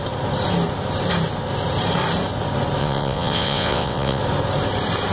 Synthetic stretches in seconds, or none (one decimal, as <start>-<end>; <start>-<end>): 2.8-4.2

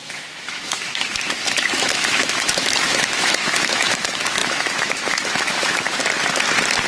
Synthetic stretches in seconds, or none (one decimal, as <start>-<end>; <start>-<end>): 0.0-6.0

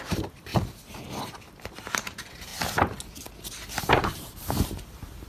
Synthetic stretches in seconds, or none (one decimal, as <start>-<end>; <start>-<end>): 0.0-0.5; 1.3-2.5; 3.8-5.3

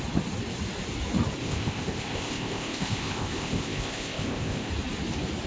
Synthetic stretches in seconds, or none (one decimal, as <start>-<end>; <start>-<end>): 1.4-4.7